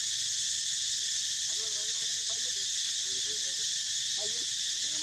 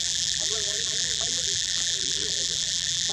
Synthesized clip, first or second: second